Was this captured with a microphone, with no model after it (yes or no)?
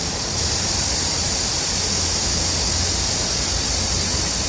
yes